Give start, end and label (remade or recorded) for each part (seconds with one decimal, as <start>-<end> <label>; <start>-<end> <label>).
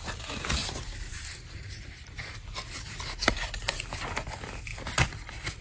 0.0-0.6 recorded; 0.6-4.0 remade; 4.0-5.6 recorded